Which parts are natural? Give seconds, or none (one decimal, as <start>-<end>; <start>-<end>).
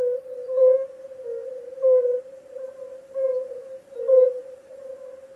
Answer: none